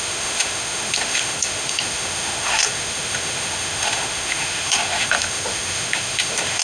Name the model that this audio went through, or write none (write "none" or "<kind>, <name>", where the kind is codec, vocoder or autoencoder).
autoencoder, DAC-VAE